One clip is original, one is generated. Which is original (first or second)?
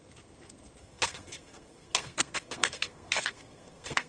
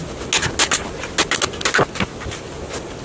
second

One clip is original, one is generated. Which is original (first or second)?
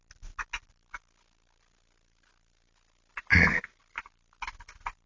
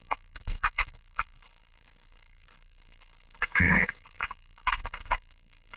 first